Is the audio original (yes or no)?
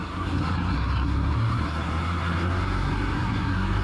no